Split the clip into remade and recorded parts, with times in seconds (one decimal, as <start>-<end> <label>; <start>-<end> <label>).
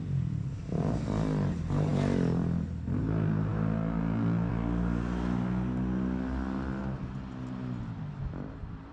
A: 0.0-8.9 recorded